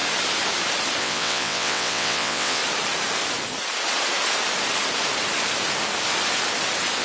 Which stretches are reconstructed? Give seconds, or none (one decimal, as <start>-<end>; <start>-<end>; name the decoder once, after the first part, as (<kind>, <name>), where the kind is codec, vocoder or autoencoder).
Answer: 1.0-2.6 (vocoder, WaveNeXt)